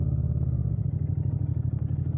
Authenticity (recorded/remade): recorded